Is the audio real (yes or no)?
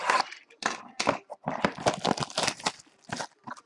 yes